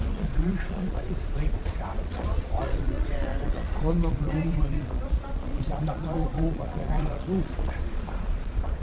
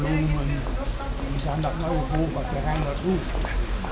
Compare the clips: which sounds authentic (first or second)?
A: second